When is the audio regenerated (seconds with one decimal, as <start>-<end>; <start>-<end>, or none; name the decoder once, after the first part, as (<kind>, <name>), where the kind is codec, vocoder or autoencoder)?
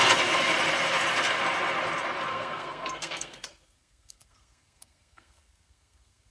2.3-6.3 (codec, SNAC)